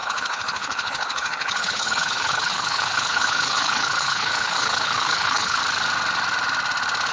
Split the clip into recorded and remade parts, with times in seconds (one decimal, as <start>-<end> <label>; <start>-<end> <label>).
0.0-5.6 remade; 5.6-7.1 recorded